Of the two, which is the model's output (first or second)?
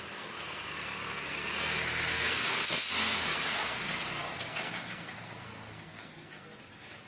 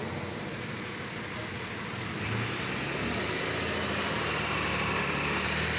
first